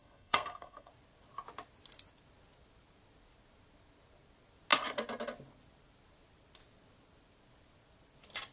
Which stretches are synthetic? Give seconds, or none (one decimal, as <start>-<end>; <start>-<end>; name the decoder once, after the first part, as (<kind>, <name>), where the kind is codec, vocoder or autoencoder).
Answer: 0.0-0.9 (codec, SNAC)